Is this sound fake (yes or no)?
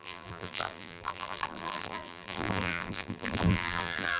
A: yes